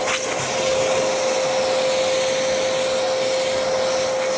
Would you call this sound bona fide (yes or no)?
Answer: yes